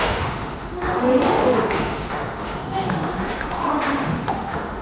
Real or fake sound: fake